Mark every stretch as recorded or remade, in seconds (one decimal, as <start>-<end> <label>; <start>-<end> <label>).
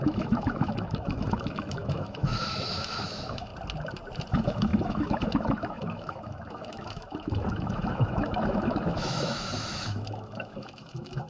0.0-3.5 remade; 3.5-4.3 recorded; 4.3-11.3 remade